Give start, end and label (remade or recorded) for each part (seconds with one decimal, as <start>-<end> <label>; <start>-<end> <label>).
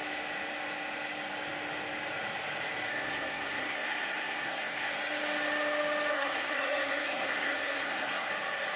0.0-2.9 recorded; 2.9-4.9 remade; 4.9-6.1 recorded; 6.1-8.3 remade; 8.3-8.8 recorded